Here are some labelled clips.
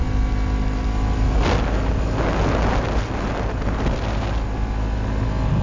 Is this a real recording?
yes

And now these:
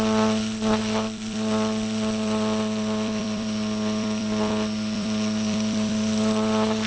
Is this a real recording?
no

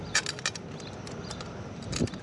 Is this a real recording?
yes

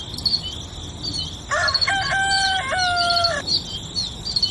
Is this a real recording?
yes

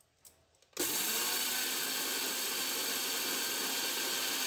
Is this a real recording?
yes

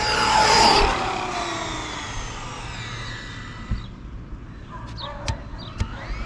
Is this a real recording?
yes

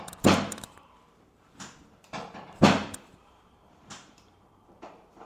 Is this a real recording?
no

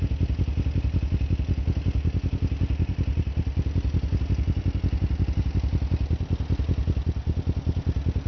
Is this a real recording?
yes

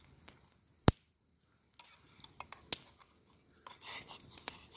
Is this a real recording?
yes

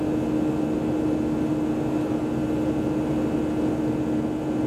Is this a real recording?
yes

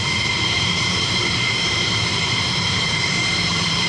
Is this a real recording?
no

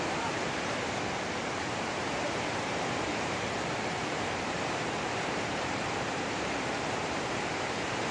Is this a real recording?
no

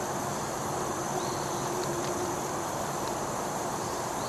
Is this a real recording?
no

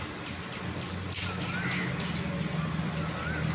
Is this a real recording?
yes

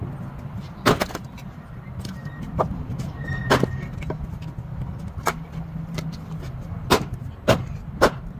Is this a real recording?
yes